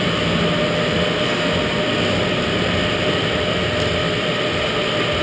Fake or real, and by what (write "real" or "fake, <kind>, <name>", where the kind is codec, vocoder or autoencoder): real